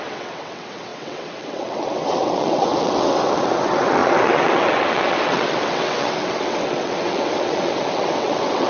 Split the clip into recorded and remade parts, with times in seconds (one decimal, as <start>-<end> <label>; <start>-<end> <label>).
0.0-8.7 remade